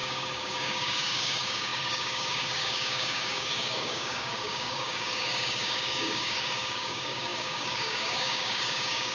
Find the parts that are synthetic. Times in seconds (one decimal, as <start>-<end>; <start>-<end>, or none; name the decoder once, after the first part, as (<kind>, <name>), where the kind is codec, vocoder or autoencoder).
0.0-9.1 (codec, DAC)